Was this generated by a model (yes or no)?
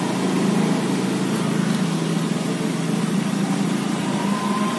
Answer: no